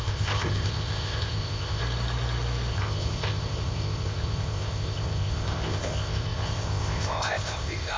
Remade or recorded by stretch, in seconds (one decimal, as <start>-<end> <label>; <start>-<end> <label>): 0.0-1.8 remade; 1.8-2.7 recorded; 2.7-8.0 remade